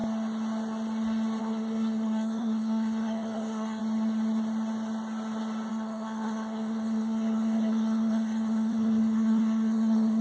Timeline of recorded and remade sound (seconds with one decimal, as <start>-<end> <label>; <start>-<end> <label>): 0.0-1.4 recorded; 1.4-3.8 remade; 3.8-5.7 recorded; 5.7-10.2 remade